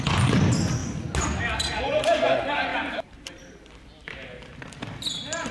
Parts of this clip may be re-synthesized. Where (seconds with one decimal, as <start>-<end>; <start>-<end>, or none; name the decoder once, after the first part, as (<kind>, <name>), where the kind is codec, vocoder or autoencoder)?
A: 0.0-0.8 (vocoder, BigVGAN v2); 1.7-5.5